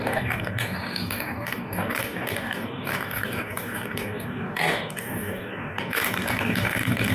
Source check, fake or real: fake